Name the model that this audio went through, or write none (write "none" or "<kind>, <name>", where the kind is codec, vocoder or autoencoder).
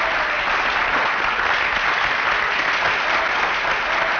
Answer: none